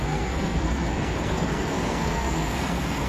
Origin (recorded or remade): remade